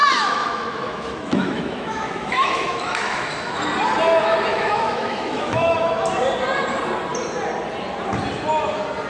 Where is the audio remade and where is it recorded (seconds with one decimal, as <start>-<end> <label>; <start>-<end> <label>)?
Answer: 0.0-3.6 remade; 3.6-4.5 recorded; 4.5-6.1 remade; 6.1-9.1 recorded